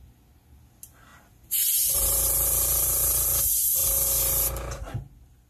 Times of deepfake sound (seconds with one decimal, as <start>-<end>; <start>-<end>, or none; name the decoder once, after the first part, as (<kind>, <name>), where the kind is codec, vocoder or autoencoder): 1.1-3.4 (vocoder, BigVGAN v2)